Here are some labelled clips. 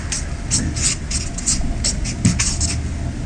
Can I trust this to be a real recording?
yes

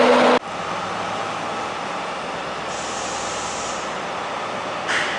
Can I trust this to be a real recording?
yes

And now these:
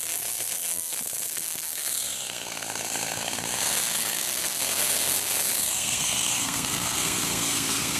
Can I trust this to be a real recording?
no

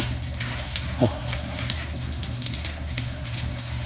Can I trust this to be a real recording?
no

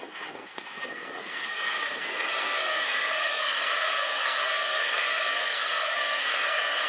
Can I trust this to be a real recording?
no